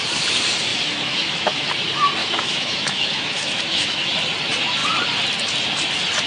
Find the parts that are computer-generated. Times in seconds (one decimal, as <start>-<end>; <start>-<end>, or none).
0.7-1.7; 2.2-4.1